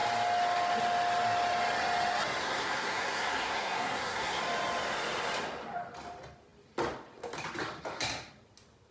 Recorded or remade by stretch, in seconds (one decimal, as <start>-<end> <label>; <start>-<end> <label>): 0.0-2.4 recorded; 2.4-4.4 remade; 4.4-8.9 recorded